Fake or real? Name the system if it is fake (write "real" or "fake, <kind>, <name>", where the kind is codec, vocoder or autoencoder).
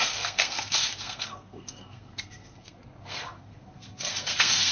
fake, codec, SNAC